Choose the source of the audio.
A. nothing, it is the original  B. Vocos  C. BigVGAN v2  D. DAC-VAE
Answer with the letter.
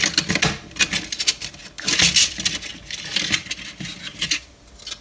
A